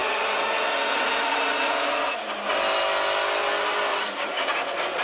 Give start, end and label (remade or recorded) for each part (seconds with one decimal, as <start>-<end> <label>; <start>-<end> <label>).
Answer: 0.0-2.2 remade; 2.2-3.9 recorded; 3.9-5.0 remade